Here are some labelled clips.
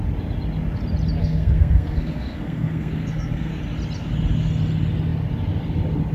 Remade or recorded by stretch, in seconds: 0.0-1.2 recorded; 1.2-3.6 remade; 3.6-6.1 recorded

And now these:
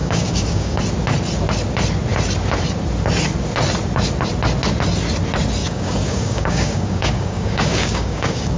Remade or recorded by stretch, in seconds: 0.0-0.8 remade; 0.8-5.6 recorded; 5.6-8.6 remade

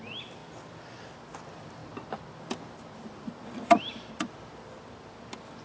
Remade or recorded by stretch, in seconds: 0.0-5.6 recorded